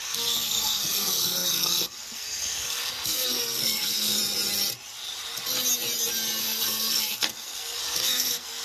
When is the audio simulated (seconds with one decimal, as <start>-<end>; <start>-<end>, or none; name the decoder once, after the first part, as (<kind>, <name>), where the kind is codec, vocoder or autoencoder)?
0.0-4.2 (codec, SNAC); 6.4-8.6